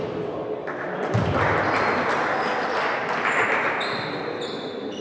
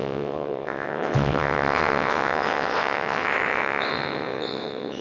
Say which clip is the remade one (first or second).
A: second